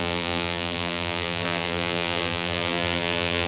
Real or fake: fake